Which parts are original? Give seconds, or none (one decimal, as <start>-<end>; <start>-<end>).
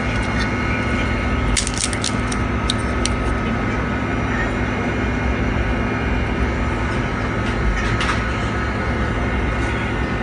0.0-10.2